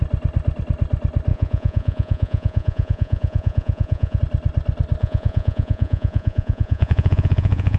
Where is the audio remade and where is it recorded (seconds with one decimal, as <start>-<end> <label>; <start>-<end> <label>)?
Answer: 0.0-1.3 recorded; 1.3-4.2 remade; 4.2-5.0 recorded; 5.0-7.8 remade